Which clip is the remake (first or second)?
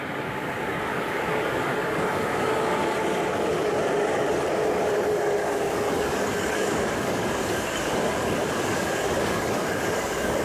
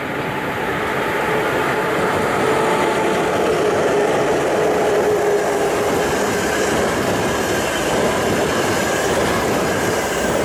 first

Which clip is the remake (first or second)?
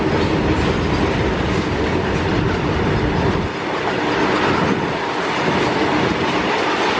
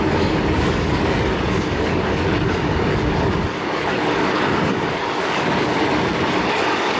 second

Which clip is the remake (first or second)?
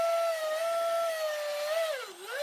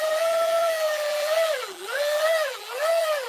second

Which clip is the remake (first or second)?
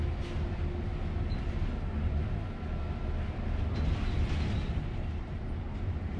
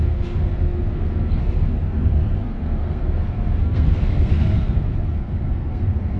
second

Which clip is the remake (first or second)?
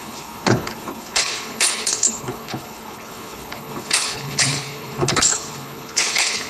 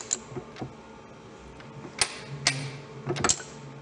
first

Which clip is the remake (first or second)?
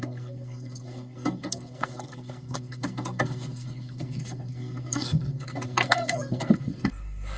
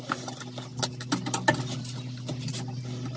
first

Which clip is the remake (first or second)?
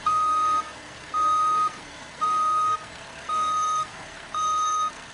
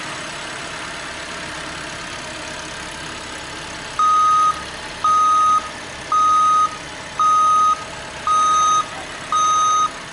first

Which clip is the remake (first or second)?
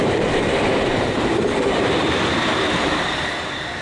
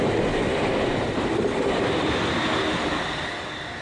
first